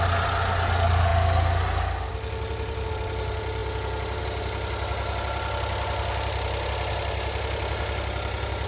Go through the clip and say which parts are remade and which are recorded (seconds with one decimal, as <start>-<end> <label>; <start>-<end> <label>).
0.0-8.7 recorded